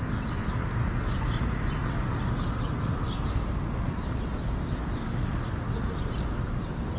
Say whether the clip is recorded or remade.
recorded